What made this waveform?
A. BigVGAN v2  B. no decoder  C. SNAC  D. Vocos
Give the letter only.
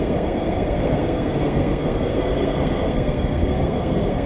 C